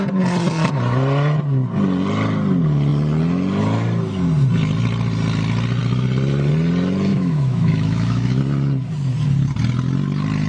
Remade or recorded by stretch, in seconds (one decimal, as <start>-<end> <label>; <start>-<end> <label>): 0.0-7.1 recorded; 7.1-8.4 remade; 8.4-10.5 recorded